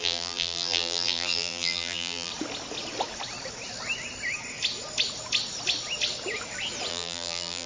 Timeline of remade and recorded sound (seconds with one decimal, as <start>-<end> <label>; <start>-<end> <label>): 0.0-2.3 remade; 2.3-6.9 recorded; 6.9-7.7 remade